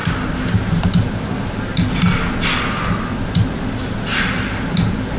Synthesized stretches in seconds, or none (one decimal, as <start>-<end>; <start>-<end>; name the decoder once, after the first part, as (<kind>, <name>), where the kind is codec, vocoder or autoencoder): none